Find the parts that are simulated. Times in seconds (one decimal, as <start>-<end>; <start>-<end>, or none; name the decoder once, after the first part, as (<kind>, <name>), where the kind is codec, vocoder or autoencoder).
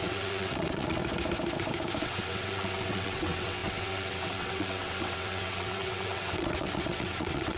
0.0-1.0 (vocoder, WaveNeXt); 2.0-7.6